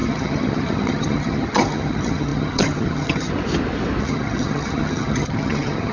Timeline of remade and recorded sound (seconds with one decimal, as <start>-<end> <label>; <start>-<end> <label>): 0.0-3.3 remade; 3.3-4.0 recorded; 4.0-5.9 remade